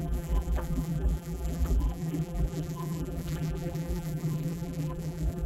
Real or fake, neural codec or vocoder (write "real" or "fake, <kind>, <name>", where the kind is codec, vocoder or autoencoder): fake, vocoder, BigVGAN v2